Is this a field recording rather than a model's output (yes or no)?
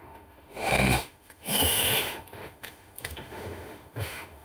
no